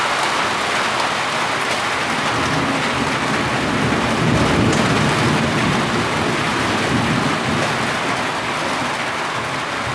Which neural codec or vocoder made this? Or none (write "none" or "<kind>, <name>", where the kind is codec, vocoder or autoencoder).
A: none